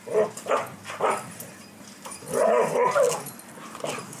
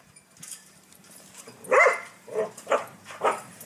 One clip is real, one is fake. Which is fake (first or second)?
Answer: second